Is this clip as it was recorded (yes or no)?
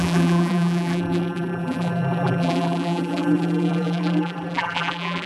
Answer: no